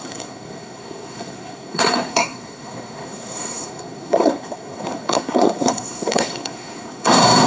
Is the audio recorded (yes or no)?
no